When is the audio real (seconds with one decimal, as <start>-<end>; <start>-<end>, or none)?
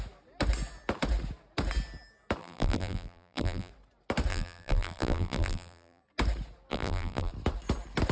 0.0-2.4; 3.7-4.3; 6.0-6.7; 7.3-8.1